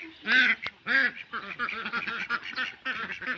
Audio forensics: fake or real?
real